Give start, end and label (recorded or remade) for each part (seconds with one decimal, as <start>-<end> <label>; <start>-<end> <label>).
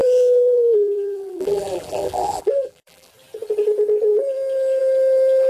0.0-3.1 remade; 3.1-5.5 recorded